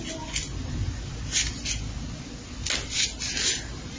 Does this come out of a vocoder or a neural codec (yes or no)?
no